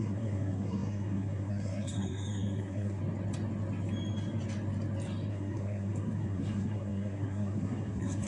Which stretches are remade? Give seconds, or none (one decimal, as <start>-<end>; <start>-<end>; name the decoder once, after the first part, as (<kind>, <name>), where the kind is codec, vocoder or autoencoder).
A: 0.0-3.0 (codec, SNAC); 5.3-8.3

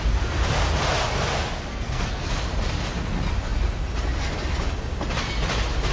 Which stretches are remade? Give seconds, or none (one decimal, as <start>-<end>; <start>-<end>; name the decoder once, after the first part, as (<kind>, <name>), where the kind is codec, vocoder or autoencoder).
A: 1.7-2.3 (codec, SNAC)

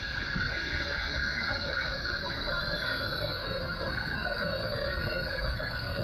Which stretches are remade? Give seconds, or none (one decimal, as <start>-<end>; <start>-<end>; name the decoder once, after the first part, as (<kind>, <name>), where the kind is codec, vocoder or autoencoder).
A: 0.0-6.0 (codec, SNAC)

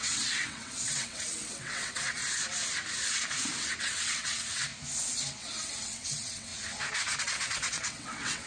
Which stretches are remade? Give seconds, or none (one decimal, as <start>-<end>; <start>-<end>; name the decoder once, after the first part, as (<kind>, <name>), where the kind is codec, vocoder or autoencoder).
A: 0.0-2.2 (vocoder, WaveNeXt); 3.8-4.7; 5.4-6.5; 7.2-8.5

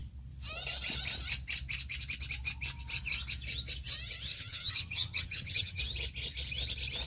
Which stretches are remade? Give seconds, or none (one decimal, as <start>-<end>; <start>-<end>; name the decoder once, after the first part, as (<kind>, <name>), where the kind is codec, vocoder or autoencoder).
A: 4.3-5.8 (vocoder, HiFi-GAN)

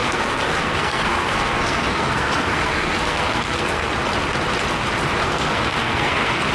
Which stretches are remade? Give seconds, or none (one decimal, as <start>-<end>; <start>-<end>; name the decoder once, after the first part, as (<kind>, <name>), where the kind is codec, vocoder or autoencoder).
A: 0.0-3.9 (codec, SNAC); 5.2-6.5